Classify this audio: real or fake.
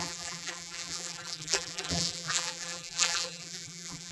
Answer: fake